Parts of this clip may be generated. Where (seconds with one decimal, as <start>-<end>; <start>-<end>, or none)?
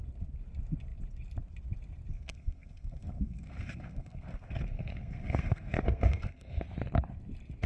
2.1-6.6